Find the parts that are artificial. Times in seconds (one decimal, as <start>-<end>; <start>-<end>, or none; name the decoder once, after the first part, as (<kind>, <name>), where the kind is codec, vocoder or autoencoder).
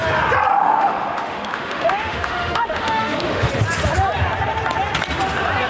0.5-3.5 (autoencoder, DAC-VAE)